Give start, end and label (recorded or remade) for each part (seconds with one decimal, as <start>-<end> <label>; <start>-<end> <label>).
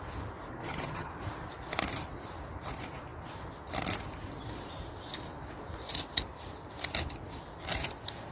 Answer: 0.0-0.5 recorded; 0.5-1.1 remade; 1.1-8.3 recorded